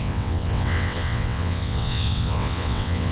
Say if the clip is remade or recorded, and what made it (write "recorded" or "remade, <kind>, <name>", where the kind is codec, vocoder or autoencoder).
remade, vocoder, WaveNeXt